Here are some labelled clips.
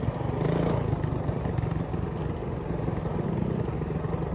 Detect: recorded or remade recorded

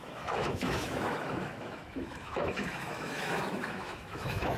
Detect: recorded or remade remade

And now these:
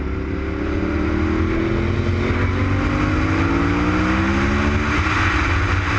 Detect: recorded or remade recorded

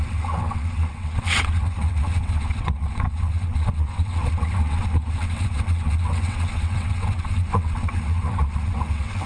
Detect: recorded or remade remade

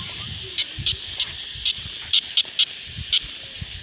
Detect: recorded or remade remade